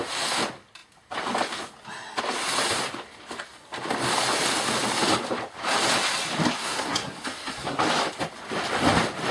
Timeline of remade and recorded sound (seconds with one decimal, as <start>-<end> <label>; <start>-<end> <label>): 0.0-6.6 recorded; 6.6-7.8 remade; 7.8-9.3 recorded